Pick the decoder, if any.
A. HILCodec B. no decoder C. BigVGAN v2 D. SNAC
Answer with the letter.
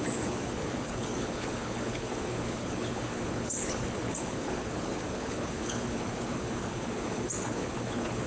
A